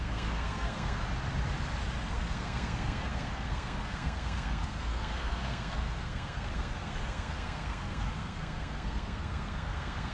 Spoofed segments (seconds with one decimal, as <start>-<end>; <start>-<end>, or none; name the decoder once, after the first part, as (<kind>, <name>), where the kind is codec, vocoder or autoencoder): 0.0-1.0 (codec, SNAC); 2.1-10.1